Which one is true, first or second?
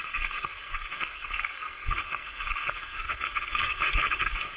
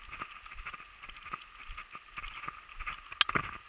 second